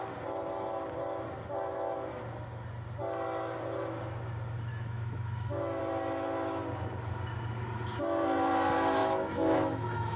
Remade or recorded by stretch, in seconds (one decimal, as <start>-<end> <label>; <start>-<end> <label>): 0.0-4.7 recorded; 4.7-5.8 remade; 5.8-9.0 recorded; 9.0-10.2 remade